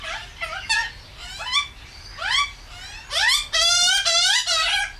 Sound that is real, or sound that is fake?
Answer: real